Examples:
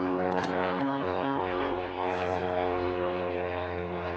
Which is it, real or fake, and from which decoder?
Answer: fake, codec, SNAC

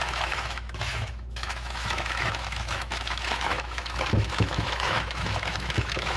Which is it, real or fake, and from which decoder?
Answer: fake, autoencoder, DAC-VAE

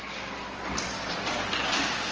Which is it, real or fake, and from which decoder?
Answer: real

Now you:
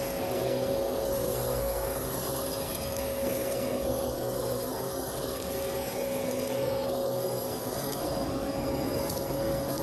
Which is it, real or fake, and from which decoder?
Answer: fake, codec, SNAC